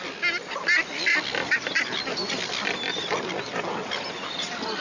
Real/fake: real